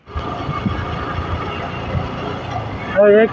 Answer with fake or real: real